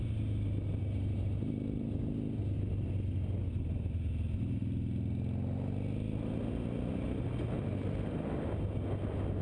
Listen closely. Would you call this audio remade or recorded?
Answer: recorded